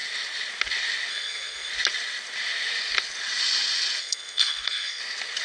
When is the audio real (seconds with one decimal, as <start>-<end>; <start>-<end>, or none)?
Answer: 0.0-1.1; 1.7-4.0; 5.0-5.4